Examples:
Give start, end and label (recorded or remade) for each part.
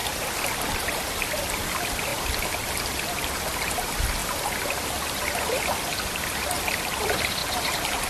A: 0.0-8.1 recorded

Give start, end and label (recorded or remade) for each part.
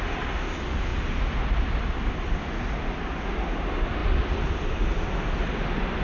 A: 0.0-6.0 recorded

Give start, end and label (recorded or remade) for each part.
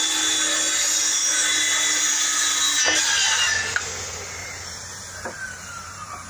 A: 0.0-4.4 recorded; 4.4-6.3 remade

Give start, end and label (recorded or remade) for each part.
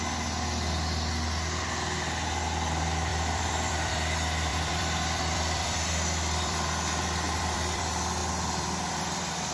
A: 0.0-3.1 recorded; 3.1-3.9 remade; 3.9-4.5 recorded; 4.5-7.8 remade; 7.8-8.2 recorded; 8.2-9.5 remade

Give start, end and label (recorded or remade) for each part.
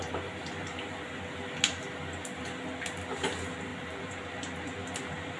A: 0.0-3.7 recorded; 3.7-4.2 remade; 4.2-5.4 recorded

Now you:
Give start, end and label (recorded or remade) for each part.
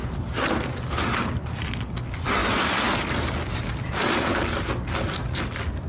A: 0.0-5.9 recorded